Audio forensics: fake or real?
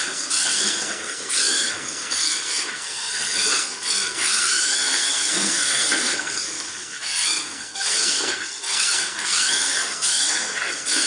fake